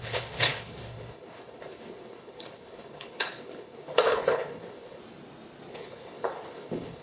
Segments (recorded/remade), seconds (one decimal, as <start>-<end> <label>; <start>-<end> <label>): 0.0-5.0 remade; 5.0-5.7 recorded; 5.7-7.0 remade